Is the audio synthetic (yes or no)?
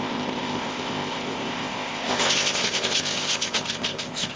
yes